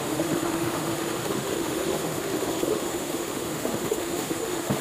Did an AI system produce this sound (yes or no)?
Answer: yes